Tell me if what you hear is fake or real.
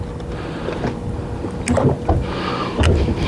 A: real